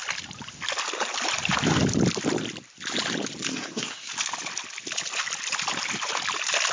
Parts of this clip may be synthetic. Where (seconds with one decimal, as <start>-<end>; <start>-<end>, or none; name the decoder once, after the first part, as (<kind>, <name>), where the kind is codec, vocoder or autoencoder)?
3.5-4.1 (codec, SNAC)